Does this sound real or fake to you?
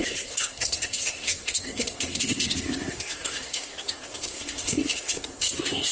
fake